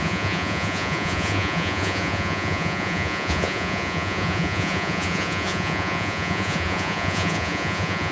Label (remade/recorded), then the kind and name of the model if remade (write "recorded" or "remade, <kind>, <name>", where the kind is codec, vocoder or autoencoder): remade, vocoder, Vocos